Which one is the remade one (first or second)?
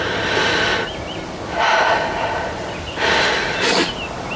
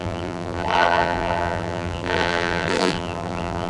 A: second